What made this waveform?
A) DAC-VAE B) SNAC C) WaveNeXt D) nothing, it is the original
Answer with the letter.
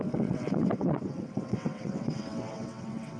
C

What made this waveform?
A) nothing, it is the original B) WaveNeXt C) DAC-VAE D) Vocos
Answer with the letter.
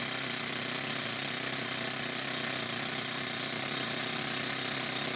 A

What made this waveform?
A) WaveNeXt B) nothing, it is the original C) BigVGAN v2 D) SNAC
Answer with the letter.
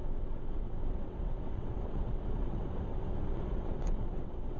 A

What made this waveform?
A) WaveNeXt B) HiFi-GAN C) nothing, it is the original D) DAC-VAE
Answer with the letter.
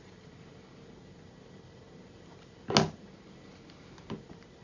C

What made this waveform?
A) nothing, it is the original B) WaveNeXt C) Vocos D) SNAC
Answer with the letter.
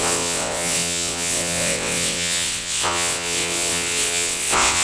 B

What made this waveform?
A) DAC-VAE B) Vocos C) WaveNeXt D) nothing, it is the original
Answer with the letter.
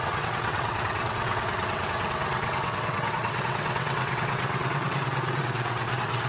C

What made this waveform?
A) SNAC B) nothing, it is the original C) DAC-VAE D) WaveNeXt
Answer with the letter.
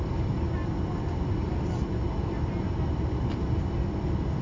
B